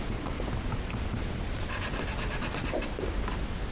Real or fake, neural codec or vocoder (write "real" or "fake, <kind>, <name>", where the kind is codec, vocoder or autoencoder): real